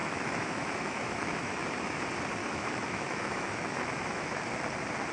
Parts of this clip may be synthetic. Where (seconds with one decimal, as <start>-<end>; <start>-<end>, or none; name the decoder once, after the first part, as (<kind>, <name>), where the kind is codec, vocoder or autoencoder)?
0.0-2.0 (autoencoder, DAC-VAE); 2.4-4.4